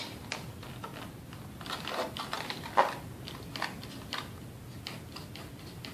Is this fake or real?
real